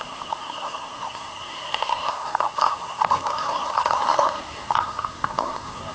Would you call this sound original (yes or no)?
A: no